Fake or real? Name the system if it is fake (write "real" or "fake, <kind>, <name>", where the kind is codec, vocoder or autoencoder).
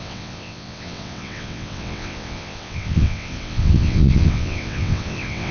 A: fake, vocoder, WaveNeXt